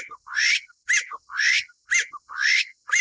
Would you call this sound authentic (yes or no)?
yes